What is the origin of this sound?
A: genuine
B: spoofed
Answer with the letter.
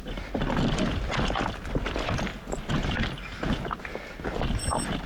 A